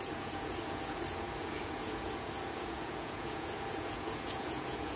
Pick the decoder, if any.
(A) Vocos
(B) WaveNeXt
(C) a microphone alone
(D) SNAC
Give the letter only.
A